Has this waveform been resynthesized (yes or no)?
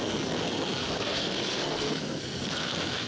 yes